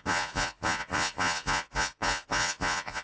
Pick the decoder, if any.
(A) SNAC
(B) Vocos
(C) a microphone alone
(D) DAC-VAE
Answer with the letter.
B